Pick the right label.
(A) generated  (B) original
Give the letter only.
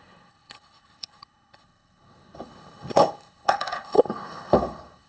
A